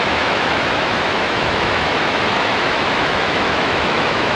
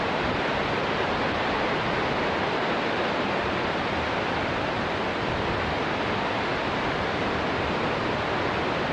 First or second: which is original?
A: second